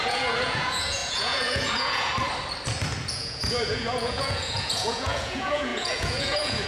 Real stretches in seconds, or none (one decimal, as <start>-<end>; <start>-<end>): 2.1-3.1